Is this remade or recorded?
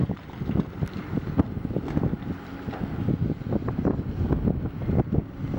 recorded